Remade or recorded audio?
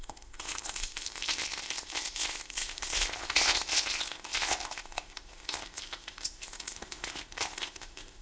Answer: remade